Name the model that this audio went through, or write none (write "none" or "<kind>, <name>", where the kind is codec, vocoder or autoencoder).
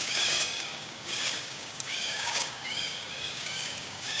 codec, DAC